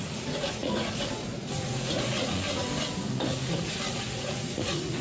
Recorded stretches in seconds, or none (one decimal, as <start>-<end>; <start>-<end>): 2.6-3.9